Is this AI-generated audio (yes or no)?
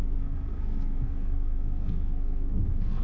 yes